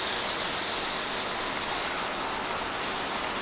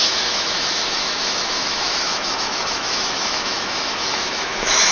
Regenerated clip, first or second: second